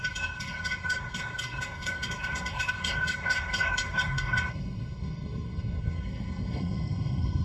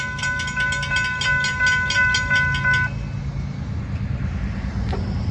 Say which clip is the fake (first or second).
first